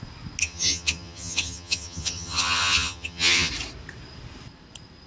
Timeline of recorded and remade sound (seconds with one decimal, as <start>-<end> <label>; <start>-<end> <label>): 0.0-0.4 recorded; 0.4-3.5 remade; 3.5-5.1 recorded